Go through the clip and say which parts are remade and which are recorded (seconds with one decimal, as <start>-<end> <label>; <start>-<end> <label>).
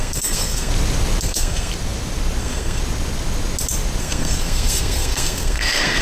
0.0-0.7 remade; 0.7-1.2 recorded; 1.2-1.7 remade; 1.7-2.4 recorded; 2.4-2.8 remade; 2.8-4.0 recorded; 4.0-6.0 remade